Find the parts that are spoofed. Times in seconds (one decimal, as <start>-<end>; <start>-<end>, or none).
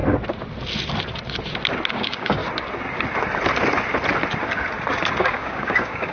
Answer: 1.9-2.4; 5.2-6.1